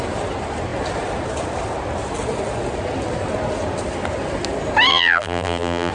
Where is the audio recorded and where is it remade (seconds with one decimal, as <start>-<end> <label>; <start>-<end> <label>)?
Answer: 0.0-4.9 recorded; 4.9-5.9 remade